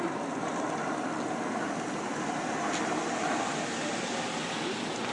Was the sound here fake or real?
real